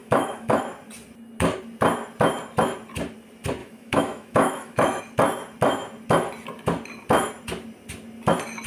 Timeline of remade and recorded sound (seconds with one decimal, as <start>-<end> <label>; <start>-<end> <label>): 0.0-0.6 remade; 0.6-3.6 recorded; 3.6-5.0 remade; 5.0-8.7 recorded